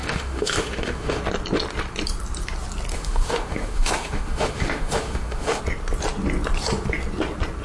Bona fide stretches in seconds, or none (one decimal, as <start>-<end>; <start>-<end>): 1.2-2.9; 5.6-7.6